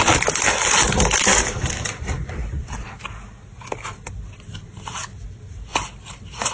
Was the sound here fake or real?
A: real